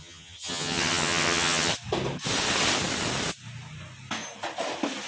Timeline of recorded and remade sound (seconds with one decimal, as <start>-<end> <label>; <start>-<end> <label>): 0.0-1.7 remade; 1.7-5.1 recorded